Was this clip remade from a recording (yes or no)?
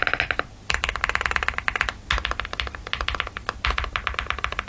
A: no